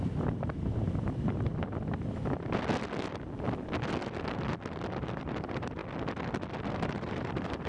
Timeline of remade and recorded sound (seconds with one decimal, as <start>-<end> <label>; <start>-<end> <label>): 0.0-1.5 remade; 1.5-5.0 recorded; 5.0-5.8 remade; 5.8-6.6 recorded; 6.6-7.7 remade